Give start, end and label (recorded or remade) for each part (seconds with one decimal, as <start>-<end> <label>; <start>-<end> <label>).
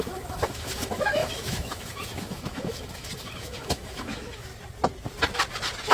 0.0-4.5 remade; 4.5-5.9 recorded